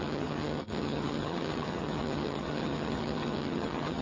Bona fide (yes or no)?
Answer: no